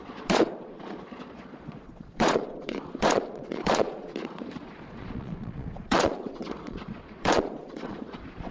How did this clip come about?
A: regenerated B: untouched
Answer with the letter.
A